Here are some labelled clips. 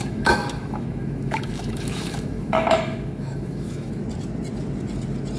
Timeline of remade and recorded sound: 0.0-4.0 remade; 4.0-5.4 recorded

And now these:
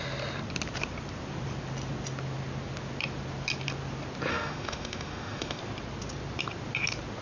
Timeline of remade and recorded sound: 0.0-4.3 recorded; 4.3-5.6 remade; 5.6-7.2 recorded

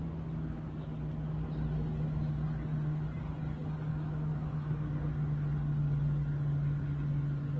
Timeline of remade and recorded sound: 0.0-3.9 recorded; 3.9-4.9 remade; 4.9-7.6 recorded

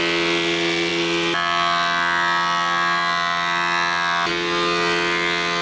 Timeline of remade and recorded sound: 0.0-5.6 recorded

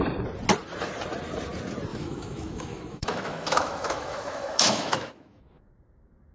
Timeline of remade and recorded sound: 0.0-1.9 recorded; 1.9-5.7 remade; 5.7-6.3 recorded